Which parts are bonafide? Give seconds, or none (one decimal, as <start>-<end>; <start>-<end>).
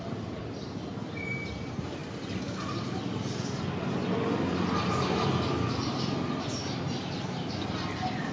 0.0-8.3